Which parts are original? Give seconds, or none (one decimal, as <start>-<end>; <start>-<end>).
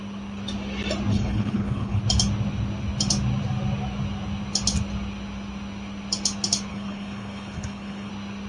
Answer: 0.0-1.1; 2.0-6.7; 8.1-8.5